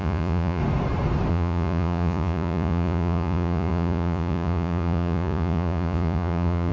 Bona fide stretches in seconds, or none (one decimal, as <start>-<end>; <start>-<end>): 0.6-1.3